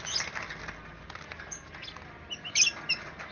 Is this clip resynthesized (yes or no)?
no